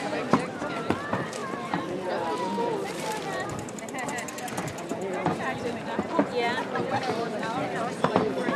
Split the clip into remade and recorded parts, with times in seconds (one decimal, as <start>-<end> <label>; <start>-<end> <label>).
0.0-8.6 recorded

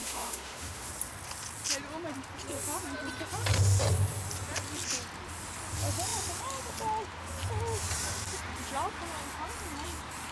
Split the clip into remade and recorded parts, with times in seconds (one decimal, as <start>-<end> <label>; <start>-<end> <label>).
0.0-0.9 remade; 0.9-10.3 recorded